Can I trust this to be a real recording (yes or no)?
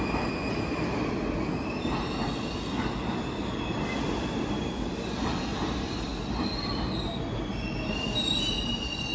yes